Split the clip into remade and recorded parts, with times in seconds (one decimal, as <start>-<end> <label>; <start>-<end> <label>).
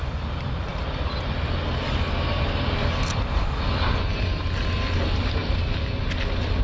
0.0-0.7 remade; 0.7-4.7 recorded; 4.7-5.4 remade; 5.4-6.6 recorded